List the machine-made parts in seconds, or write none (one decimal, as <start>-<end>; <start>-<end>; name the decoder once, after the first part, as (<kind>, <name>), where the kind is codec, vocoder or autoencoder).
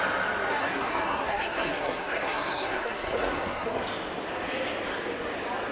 0.6-3.8 (codec, SNAC)